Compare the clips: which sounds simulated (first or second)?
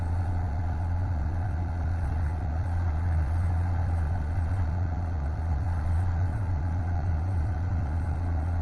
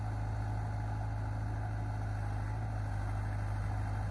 first